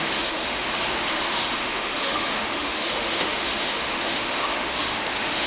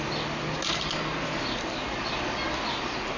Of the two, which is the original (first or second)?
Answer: second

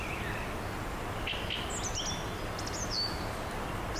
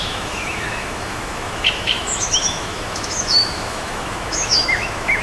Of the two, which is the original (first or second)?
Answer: first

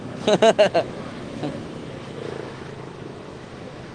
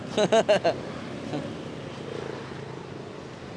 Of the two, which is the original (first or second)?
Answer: second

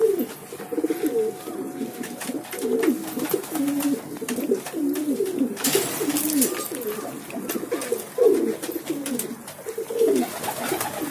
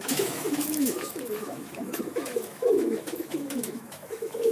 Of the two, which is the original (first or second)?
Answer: first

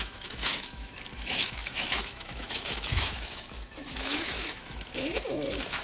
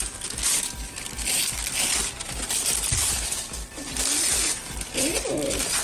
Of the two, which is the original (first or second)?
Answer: second